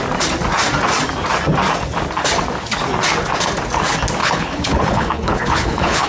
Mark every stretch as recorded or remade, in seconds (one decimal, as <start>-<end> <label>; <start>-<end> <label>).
0.0-4.2 recorded; 4.2-6.1 remade